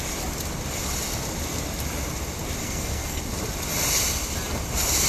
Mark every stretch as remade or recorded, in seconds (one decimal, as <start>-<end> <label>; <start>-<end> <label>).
0.0-2.6 recorded; 2.6-3.2 remade; 3.2-5.1 recorded